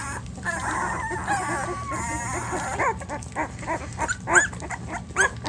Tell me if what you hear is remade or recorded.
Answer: recorded